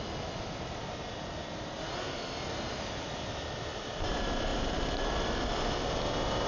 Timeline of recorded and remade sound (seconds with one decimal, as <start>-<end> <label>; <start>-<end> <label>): 0.0-6.5 recorded